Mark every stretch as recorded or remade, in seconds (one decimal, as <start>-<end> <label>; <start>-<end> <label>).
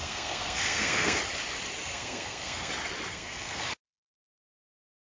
0.0-1.2 remade; 1.2-1.8 recorded; 1.8-2.7 remade; 2.7-3.1 recorded; 3.1-3.6 remade; 3.6-5.1 recorded